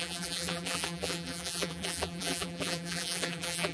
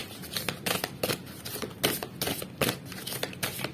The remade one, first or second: first